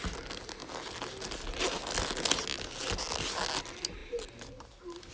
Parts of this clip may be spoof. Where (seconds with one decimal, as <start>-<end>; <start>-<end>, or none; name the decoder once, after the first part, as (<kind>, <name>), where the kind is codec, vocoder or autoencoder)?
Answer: none

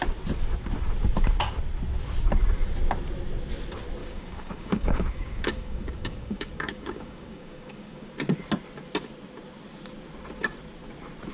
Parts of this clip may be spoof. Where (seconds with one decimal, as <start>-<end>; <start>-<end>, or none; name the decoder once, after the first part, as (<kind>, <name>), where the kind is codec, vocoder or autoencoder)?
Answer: 4.0-8.1 (codec, DAC)

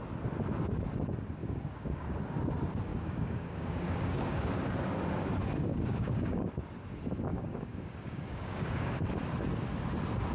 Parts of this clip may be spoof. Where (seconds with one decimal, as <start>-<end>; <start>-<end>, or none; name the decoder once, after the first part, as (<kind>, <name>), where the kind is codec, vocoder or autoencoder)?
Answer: 1.4-2.2 (codec, DAC); 2.9-4.5; 5.7-6.5; 7.3-8.9

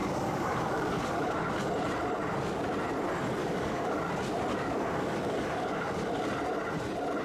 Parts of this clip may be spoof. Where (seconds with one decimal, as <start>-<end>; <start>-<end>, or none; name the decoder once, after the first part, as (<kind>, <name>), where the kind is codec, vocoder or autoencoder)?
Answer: 0.0-1.5 (codec, DAC); 3.4-4.0; 4.5-6.0